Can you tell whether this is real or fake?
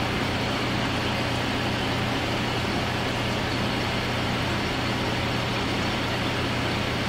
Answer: real